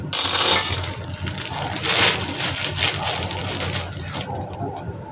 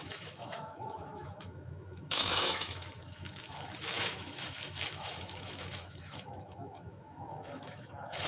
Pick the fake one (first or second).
second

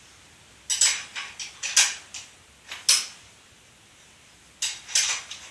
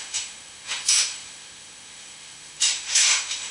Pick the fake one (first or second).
second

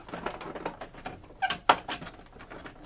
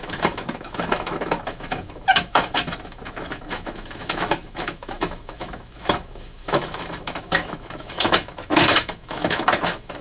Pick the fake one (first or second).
second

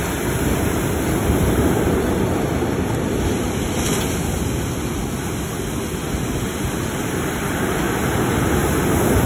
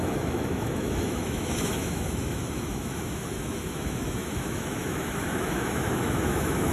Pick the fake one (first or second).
second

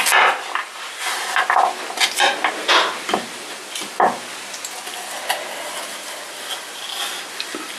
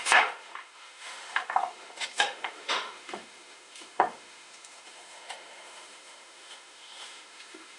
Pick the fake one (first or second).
second